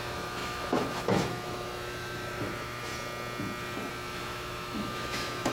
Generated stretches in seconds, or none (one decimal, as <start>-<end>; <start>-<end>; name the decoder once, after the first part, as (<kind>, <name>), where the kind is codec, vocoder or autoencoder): 0.0-2.9 (autoencoder, DAC-VAE); 3.9-5.5